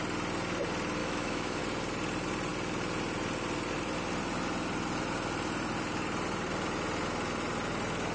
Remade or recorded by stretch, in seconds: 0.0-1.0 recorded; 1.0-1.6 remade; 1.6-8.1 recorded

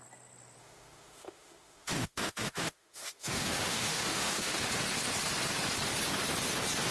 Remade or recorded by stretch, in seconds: 0.0-0.6 recorded; 0.6-4.7 remade; 4.7-6.9 recorded

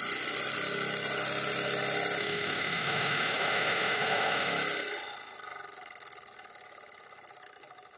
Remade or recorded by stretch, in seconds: 0.0-2.2 recorded; 2.2-4.5 remade; 4.5-8.0 recorded

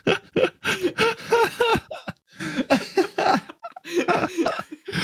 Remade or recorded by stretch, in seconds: 0.0-1.7 recorded; 1.7-5.0 remade

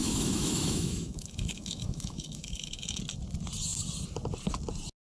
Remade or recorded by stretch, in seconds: 0.0-3.0 remade; 3.0-5.1 recorded

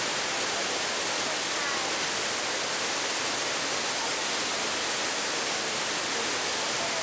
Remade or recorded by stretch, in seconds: 0.0-7.0 recorded